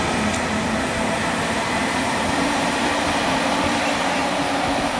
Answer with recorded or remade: remade